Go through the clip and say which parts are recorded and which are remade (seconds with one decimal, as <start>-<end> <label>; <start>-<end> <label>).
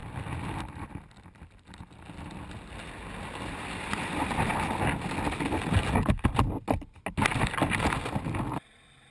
0.0-9.1 recorded